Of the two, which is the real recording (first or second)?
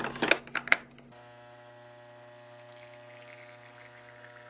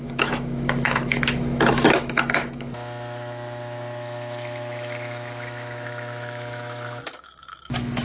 first